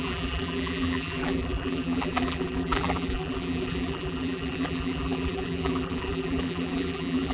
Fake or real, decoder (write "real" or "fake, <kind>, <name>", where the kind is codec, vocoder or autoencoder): fake, vocoder, BigVGAN v2